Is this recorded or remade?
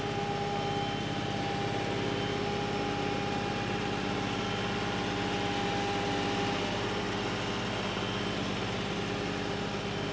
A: recorded